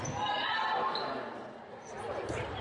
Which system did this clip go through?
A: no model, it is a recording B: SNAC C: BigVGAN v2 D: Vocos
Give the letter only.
A